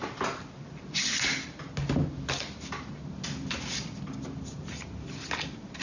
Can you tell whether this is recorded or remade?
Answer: recorded